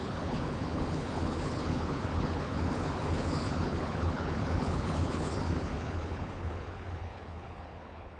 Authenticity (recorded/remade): remade